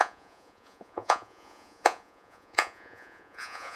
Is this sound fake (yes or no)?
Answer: yes